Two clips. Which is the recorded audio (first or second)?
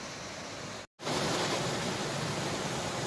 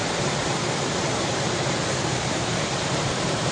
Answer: first